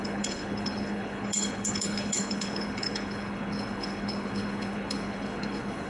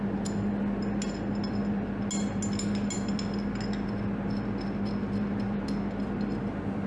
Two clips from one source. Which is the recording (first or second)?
second